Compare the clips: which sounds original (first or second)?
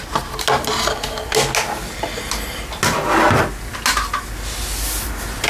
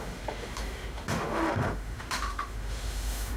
first